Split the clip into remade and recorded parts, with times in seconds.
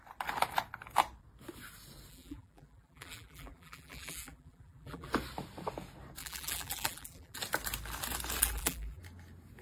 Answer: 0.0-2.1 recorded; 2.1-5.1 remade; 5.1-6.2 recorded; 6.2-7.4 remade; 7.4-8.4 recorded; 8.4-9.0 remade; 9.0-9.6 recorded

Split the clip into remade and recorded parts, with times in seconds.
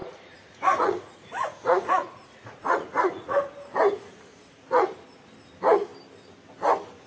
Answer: 0.0-3.4 remade; 3.4-4.3 recorded; 4.3-4.9 remade; 4.9-7.1 recorded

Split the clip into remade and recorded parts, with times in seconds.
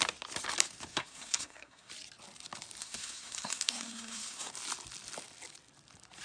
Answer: 0.0-0.9 recorded; 0.9-1.9 remade; 1.9-2.8 recorded; 2.8-4.5 remade; 4.5-6.2 recorded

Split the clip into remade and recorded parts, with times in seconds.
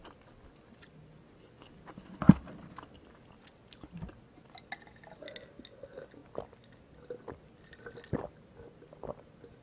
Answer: 0.0-9.6 recorded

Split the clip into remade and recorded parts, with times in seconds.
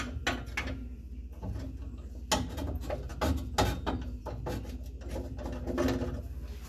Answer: 0.0-6.7 recorded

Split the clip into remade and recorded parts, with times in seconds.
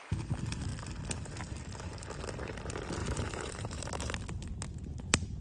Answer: 0.0-3.0 recorded; 3.0-4.5 remade; 4.5-5.4 recorded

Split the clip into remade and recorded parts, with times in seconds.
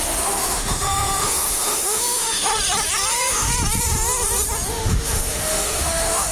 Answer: 0.0-2.5 remade; 2.5-3.1 recorded; 3.1-3.5 remade; 3.5-4.7 recorded; 4.7-6.3 remade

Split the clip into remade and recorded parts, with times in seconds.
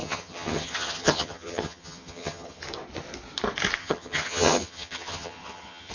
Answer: 0.0-2.6 remade; 2.6-3.8 recorded; 3.8-5.9 remade